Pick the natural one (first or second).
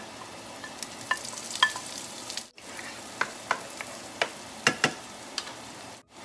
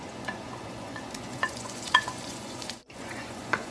first